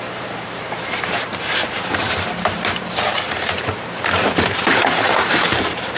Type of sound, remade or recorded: remade